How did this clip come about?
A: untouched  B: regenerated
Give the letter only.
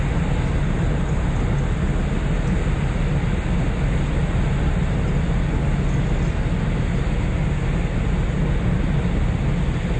A